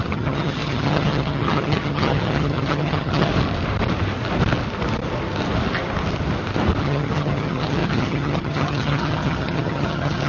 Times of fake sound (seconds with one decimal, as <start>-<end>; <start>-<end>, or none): 0.0-3.3; 6.8-10.3